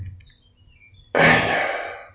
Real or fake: real